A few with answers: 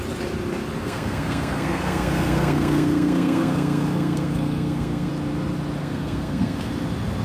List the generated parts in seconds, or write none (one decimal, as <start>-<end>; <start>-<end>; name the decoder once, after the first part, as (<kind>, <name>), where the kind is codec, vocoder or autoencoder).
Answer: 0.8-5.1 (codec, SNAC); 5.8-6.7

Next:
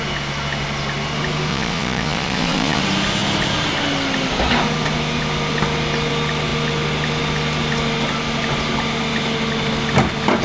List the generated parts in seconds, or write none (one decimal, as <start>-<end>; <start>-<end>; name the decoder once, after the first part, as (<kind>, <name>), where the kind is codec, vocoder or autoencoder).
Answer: 1.5-2.8 (vocoder, Vocos)

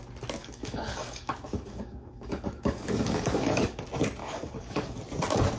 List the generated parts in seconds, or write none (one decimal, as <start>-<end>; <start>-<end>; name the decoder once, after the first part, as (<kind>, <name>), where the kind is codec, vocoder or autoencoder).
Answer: 0.4-3.8 (codec, DAC); 4.2-5.0